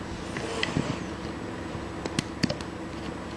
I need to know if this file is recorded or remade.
recorded